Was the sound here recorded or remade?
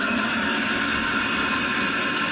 recorded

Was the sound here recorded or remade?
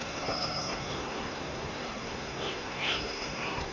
remade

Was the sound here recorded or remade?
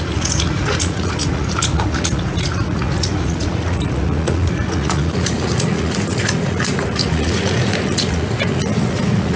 remade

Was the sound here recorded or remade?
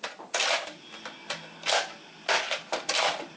recorded